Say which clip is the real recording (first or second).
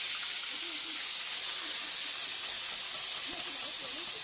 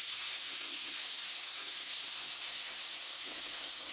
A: first